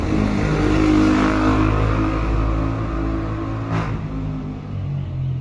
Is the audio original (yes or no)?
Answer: yes